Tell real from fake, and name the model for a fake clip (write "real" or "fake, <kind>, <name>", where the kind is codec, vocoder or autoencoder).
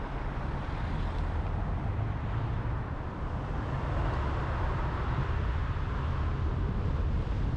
real